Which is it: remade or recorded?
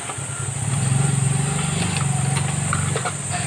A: recorded